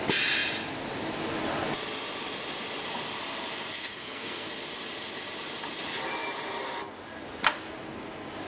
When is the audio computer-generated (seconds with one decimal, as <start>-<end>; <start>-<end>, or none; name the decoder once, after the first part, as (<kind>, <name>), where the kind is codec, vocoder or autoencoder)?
3.9-4.5 (codec, SNAC)